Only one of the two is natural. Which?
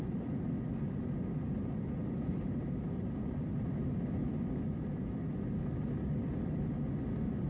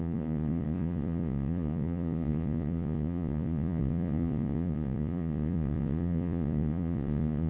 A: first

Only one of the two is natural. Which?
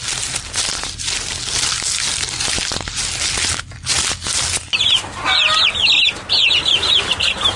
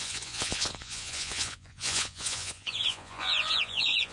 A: first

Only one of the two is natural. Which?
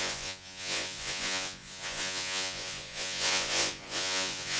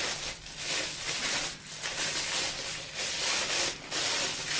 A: second